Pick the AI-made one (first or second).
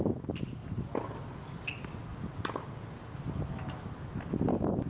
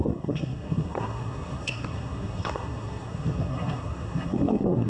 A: second